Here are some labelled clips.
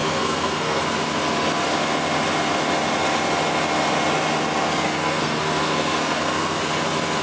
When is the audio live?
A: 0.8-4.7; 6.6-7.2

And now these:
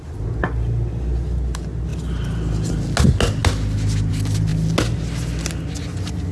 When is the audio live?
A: 0.0-6.3

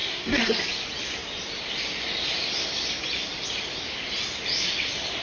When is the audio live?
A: 0.6-5.2

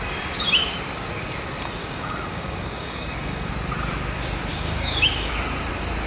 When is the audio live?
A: 0.0-1.8; 3.5-4.5; 5.3-6.1